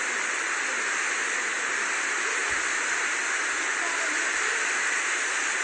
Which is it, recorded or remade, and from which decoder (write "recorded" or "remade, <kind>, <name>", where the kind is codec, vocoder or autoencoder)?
recorded